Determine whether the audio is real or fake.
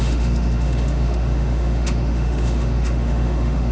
fake